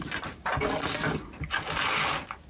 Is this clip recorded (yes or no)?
yes